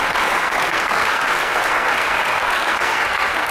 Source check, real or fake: fake